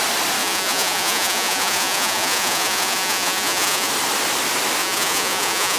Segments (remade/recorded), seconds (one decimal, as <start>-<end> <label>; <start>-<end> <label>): 0.0-0.4 recorded; 0.4-3.9 remade; 3.9-4.8 recorded; 4.8-5.8 remade